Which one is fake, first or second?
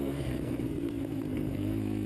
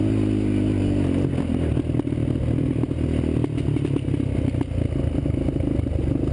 first